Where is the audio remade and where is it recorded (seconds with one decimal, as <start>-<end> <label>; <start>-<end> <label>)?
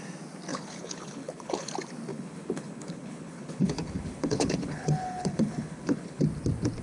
0.0-0.5 recorded; 0.5-1.7 remade; 1.7-2.1 recorded; 2.1-6.2 remade; 6.2-6.8 recorded